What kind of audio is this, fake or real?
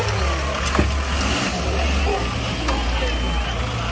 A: real